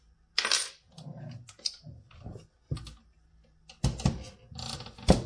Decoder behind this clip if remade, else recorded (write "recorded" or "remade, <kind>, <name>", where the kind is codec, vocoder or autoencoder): recorded